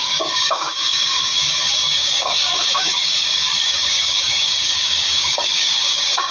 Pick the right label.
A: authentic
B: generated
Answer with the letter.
B